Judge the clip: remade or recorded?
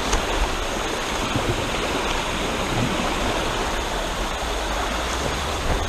recorded